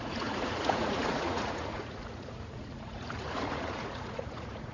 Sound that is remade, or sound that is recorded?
remade